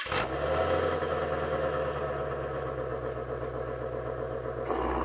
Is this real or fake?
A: real